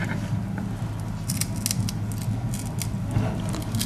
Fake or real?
real